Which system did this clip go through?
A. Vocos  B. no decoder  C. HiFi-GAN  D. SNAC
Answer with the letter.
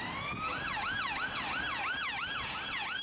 B